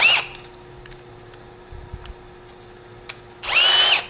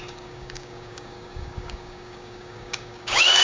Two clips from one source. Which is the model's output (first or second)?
second